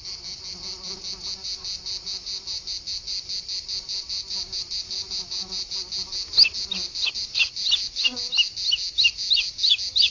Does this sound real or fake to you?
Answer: real